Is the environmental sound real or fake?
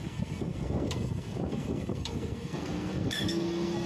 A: fake